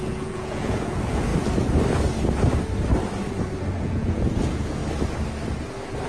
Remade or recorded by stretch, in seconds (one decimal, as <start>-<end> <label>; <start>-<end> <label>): 0.0-1.3 remade; 1.3-3.8 recorded; 3.8-4.8 remade; 4.8-6.1 recorded